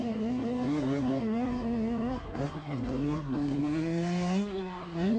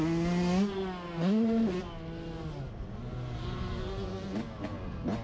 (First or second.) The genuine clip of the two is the second